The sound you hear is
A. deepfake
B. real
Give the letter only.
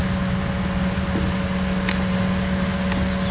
B